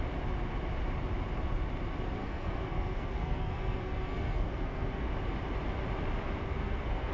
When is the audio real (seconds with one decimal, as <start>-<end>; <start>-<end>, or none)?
0.0-2.2; 5.1-6.4